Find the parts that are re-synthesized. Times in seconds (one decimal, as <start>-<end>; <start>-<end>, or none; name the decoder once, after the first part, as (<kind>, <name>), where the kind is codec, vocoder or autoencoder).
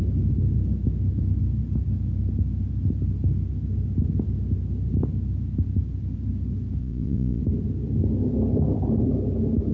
6.8-7.4 (vocoder, Vocos)